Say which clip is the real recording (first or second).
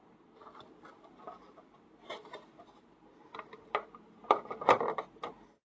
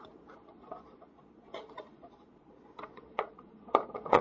first